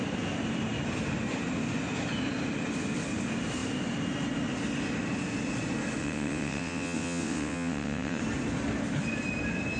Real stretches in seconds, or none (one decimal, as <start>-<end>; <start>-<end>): 0.0-6.0; 8.2-9.8